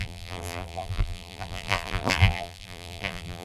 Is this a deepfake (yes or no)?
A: yes